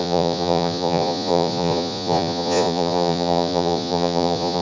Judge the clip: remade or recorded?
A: remade